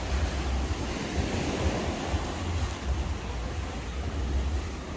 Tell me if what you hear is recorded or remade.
recorded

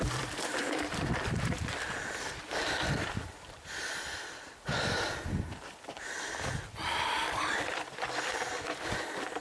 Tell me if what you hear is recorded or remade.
remade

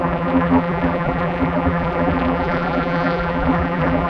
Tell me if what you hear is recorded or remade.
remade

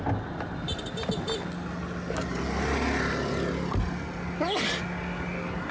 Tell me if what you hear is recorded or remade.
recorded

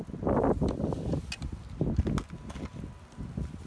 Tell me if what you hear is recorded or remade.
recorded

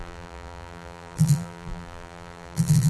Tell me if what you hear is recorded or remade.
remade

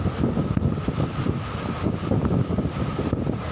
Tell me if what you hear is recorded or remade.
recorded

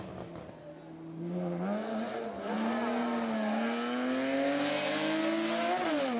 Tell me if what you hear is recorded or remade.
recorded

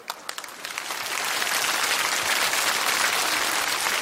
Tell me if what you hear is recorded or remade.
recorded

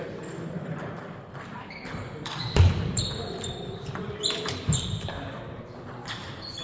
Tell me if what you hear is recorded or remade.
remade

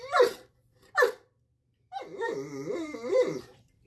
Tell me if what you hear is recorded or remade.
remade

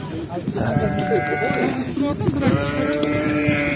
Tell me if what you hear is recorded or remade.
remade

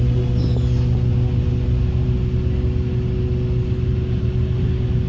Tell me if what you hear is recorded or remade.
recorded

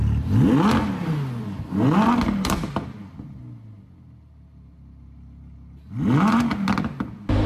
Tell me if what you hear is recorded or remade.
recorded